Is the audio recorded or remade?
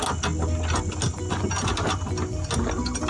recorded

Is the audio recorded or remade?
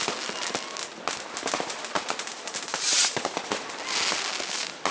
recorded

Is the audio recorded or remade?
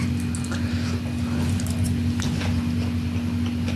recorded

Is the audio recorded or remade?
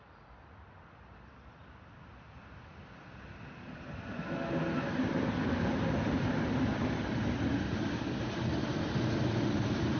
recorded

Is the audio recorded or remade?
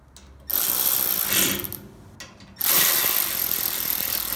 recorded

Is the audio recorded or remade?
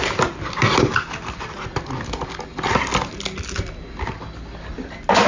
recorded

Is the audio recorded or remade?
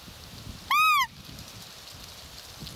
recorded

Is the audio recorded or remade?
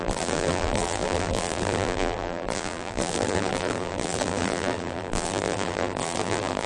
remade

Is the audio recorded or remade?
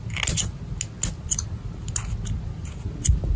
recorded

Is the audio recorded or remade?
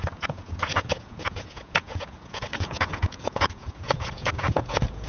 remade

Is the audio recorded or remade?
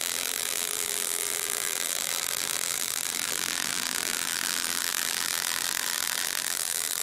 remade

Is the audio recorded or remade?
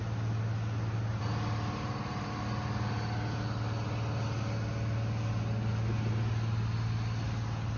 recorded